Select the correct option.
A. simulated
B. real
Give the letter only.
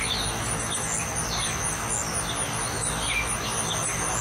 B